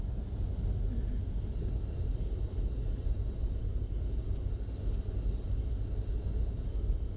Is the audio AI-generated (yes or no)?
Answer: no